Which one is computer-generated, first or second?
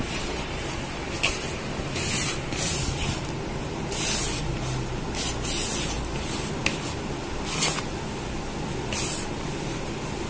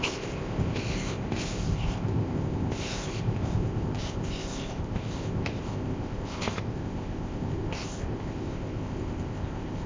second